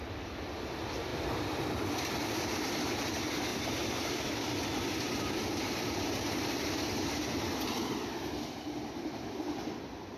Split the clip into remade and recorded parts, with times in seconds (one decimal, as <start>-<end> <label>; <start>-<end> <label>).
0.0-1.1 recorded; 1.1-2.7 remade; 2.7-3.5 recorded; 3.5-6.6 remade; 6.6-10.2 recorded